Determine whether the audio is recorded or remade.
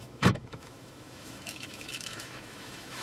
remade